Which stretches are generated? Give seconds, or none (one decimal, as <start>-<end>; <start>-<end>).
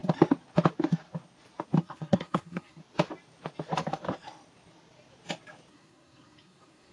1.8-2.8; 5.7-6.9